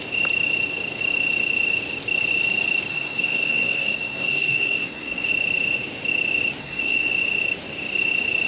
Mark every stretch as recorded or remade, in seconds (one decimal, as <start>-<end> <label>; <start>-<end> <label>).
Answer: 0.0-2.9 recorded; 2.9-5.3 remade; 5.3-6.6 recorded; 6.6-7.1 remade; 7.1-8.5 recorded